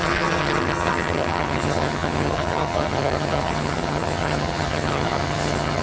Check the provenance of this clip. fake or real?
fake